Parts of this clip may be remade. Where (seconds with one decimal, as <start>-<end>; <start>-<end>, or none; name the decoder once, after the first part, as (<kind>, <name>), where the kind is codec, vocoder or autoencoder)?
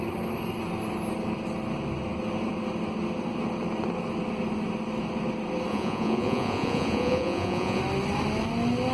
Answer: 5.7-7.8 (vocoder, Vocos)